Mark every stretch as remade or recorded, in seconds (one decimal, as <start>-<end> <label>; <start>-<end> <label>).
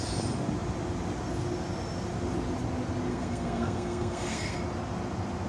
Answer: 0.0-3.1 recorded; 3.1-4.6 remade; 4.6-5.5 recorded